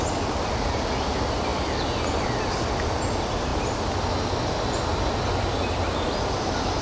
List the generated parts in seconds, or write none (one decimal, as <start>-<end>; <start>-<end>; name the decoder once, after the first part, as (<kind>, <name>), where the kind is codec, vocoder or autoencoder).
none

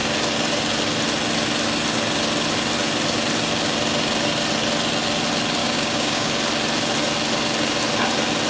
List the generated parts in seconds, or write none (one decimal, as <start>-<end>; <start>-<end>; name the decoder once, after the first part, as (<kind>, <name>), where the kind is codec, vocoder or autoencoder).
5.6-6.3 (codec, DAC)